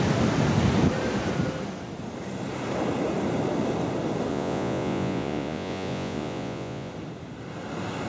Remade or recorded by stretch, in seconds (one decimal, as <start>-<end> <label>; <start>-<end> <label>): 0.0-4.3 recorded; 4.3-6.9 remade; 6.9-8.1 recorded